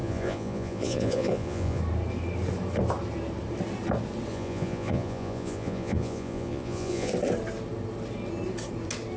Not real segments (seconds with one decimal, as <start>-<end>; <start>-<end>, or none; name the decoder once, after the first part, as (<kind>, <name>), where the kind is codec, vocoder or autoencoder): 0.0-1.8 (vocoder, Vocos); 4.3-7.1